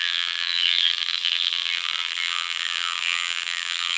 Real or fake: fake